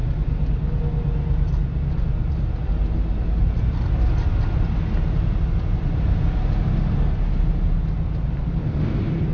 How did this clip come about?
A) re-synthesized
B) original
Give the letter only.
B